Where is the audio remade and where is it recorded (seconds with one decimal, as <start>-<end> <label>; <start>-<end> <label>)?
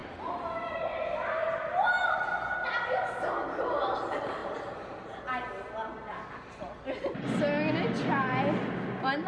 0.0-9.3 recorded